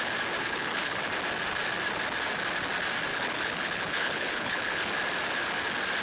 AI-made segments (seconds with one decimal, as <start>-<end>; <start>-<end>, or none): 0.4-1.0; 3.1-4.9